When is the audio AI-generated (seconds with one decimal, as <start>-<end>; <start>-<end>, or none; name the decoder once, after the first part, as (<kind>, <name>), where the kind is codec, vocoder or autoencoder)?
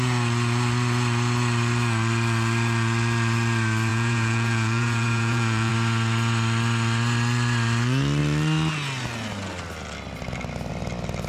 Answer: 3.9-5.7 (vocoder, Vocos)